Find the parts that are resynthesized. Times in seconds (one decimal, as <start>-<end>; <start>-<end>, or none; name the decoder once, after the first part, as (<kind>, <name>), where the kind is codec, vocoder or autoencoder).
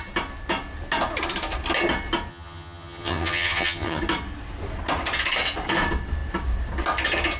2.3-4.0 (vocoder, HiFi-GAN)